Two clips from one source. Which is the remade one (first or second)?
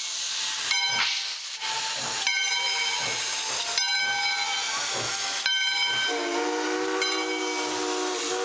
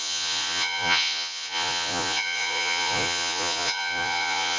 second